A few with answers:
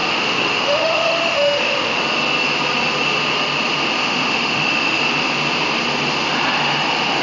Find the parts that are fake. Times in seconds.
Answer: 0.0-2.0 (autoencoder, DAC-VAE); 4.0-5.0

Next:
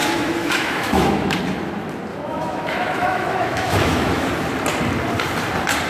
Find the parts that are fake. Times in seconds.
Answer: 0.0-1.4 (autoencoder, DAC-VAE); 2.1-4.3

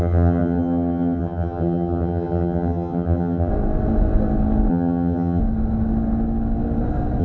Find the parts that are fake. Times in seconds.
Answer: 0.0-3.5 (vocoder, HiFi-GAN); 4.7-5.4

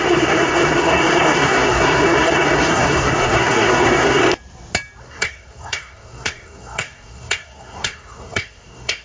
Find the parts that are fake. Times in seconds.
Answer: 0.0-4.2 (codec, SNAC); 5.0-9.0

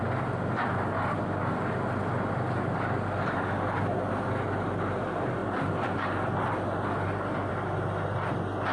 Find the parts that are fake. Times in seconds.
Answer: none

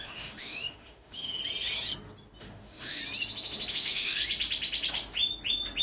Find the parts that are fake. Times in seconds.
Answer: 0.0-1.4 (autoencoder, DAC-VAE); 2.4-3.0; 3.7-4.2

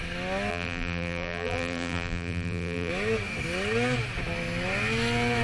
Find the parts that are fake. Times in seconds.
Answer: 0.5-2.9 (vocoder, BigVGAN v2)